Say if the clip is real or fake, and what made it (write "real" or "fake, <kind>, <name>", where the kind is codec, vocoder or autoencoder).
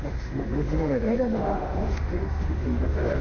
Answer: fake, autoencoder, DAC-VAE